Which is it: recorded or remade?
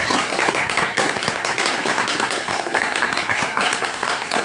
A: remade